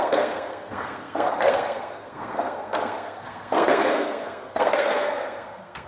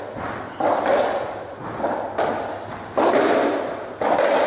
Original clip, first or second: second